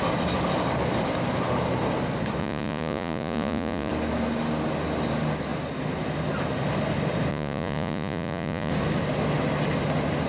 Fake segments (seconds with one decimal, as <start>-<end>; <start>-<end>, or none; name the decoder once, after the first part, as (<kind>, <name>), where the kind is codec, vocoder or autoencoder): 2.4-3.9 (vocoder, Vocos); 7.3-8.7